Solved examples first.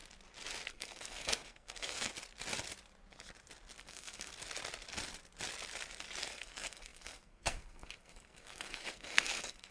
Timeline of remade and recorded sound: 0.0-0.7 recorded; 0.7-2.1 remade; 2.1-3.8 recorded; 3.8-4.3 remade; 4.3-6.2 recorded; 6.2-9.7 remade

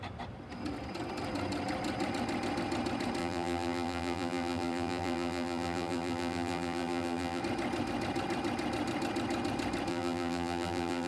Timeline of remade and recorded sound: 0.0-3.2 recorded; 3.2-7.4 remade; 7.4-9.9 recorded; 9.9-11.1 remade

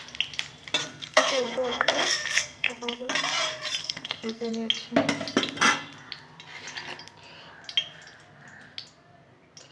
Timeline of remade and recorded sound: 0.0-0.9 recorded; 0.9-3.1 remade; 3.1-3.8 recorded; 3.8-4.5 remade; 4.5-9.7 recorded

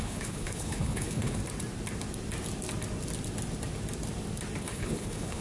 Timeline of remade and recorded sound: 0.0-1.4 remade; 1.4-4.6 recorded; 4.6-5.4 remade

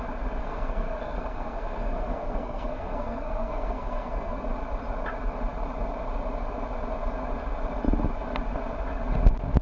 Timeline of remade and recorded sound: 0.0-0.4 recorded; 0.4-4.4 remade; 4.4-9.6 recorded